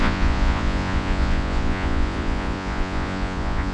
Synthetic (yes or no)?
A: yes